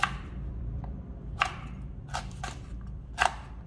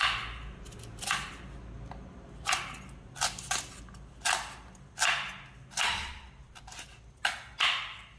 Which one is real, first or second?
second